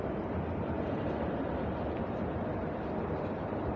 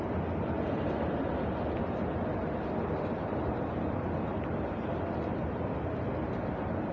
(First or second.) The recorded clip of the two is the second